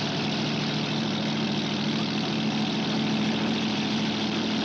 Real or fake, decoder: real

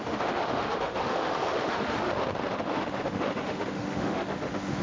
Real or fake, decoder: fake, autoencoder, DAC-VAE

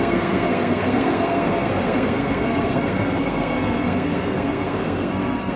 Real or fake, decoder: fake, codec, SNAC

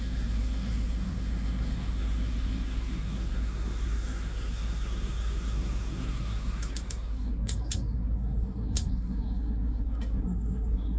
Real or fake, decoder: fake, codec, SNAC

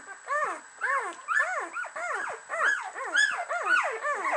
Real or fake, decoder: real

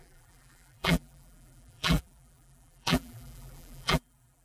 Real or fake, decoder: fake, vocoder, BigVGAN v2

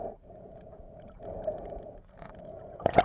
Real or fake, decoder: fake, vocoder, Vocos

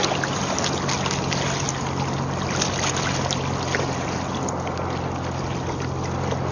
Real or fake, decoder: real